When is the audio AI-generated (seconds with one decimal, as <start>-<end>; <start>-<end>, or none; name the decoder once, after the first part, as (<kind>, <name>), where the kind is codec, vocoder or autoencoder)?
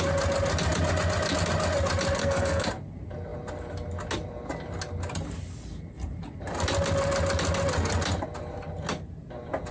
2.2-2.7 (codec, SNAC)